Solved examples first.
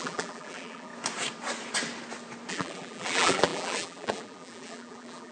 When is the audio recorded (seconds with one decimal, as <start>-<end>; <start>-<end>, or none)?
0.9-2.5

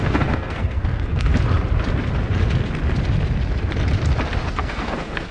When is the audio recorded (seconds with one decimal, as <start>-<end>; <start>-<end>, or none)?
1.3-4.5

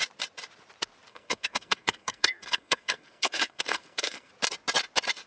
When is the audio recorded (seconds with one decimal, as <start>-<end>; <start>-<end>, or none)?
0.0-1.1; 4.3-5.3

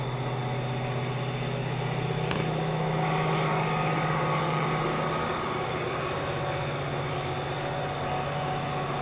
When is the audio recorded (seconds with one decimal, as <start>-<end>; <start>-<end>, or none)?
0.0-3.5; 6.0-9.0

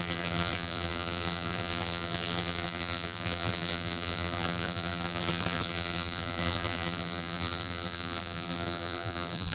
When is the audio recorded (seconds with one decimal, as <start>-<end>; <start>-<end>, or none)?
none